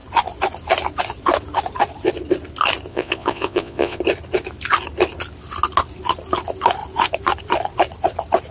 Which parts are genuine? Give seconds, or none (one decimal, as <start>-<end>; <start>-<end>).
0.0-2.9; 4.0-8.5